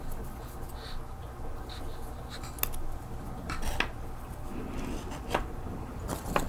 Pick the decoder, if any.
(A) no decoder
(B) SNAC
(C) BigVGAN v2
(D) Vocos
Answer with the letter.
A